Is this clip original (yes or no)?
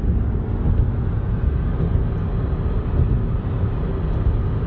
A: yes